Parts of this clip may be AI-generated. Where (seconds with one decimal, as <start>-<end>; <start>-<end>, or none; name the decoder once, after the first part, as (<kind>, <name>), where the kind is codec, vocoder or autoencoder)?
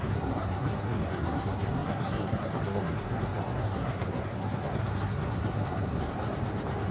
0.0-6.1 (codec, SNAC)